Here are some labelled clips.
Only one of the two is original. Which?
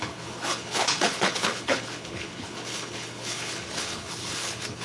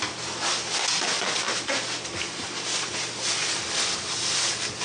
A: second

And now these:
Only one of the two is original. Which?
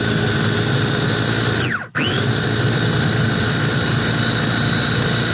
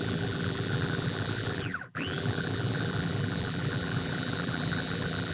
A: first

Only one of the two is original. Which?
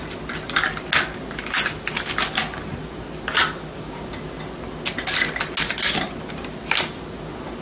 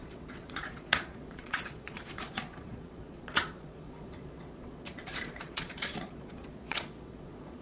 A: first